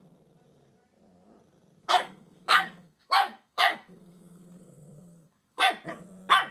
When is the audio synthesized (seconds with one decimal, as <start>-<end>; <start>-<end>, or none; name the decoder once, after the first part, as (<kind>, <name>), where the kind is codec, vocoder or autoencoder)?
1.8-5.7 (codec, SNAC)